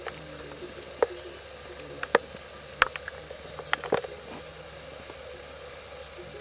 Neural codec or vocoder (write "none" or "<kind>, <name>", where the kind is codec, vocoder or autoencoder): none